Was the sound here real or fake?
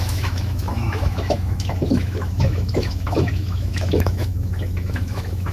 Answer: fake